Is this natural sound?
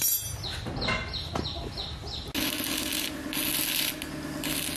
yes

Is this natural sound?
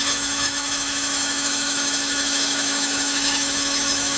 no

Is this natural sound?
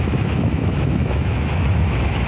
no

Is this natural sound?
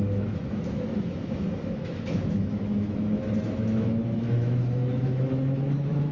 no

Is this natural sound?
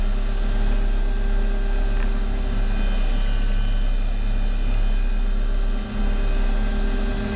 yes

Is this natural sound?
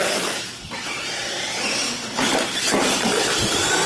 yes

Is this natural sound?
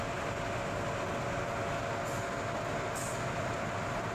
yes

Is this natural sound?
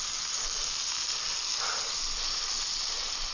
yes